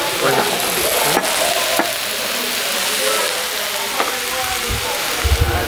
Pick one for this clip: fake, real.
real